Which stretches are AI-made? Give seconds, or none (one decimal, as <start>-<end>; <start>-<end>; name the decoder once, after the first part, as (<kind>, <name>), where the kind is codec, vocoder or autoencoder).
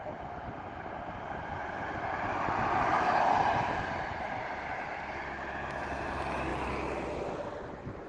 none